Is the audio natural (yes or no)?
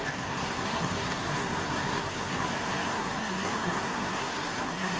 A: no